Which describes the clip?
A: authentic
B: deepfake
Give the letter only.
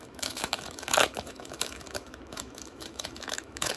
B